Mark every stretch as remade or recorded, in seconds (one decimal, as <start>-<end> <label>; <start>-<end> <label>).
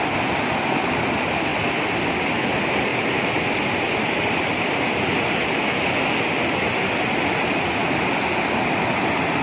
0.0-9.4 recorded